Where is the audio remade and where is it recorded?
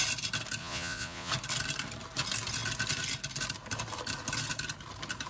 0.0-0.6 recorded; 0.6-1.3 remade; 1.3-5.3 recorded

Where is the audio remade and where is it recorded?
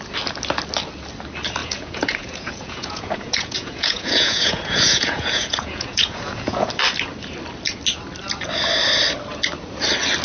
0.0-1.6 recorded; 1.6-6.7 remade; 6.7-10.2 recorded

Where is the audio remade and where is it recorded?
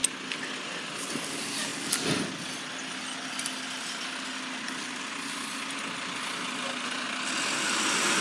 0.0-8.2 recorded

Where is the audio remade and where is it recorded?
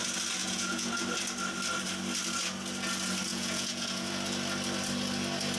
0.0-0.4 recorded; 0.4-0.9 remade; 0.9-3.3 recorded; 3.3-4.1 remade; 4.1-5.6 recorded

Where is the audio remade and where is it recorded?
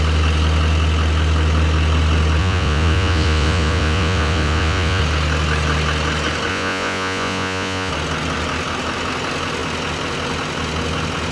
0.0-2.4 recorded; 2.4-5.0 remade; 5.0-6.5 recorded; 6.5-7.9 remade; 7.9-11.3 recorded